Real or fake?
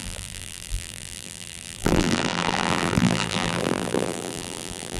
fake